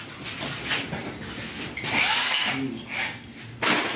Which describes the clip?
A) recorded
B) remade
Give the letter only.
A